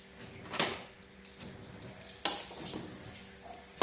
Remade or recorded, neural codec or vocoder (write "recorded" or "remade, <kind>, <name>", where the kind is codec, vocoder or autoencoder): recorded